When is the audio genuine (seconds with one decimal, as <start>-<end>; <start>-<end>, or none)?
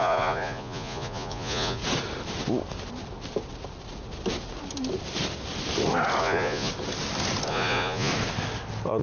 1.8-6.2; 6.7-7.5; 8.1-9.0